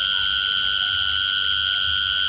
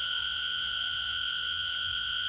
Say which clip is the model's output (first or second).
second